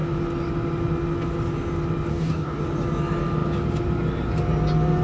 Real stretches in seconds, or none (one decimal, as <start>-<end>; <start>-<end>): 0.0-2.1; 2.6-5.0